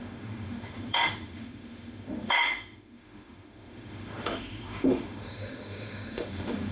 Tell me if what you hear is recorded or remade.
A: remade